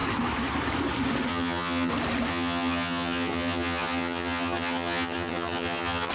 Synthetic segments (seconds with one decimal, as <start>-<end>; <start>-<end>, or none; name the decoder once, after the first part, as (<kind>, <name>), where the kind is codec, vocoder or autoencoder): 1.3-1.9 (vocoder, HiFi-GAN); 2.3-6.1